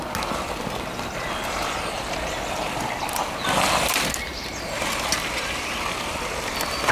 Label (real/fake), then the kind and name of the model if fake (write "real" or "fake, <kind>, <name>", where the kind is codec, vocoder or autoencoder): real